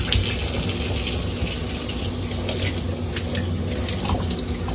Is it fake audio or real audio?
real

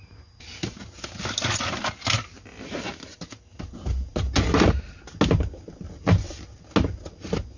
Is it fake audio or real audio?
real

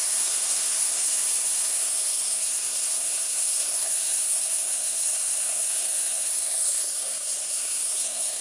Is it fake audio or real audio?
fake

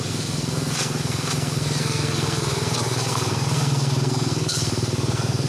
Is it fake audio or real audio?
fake